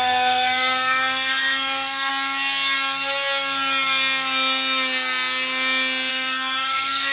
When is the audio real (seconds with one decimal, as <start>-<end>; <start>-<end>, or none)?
2.1-6.1